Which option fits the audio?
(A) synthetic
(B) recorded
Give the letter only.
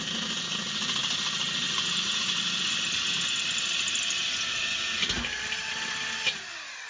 B